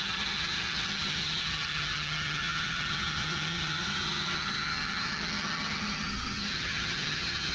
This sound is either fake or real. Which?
fake